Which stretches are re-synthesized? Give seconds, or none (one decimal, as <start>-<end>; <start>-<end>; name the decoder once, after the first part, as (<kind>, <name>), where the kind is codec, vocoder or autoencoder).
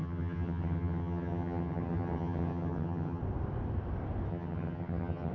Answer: 0.0-3.2 (vocoder, HiFi-GAN); 4.3-5.3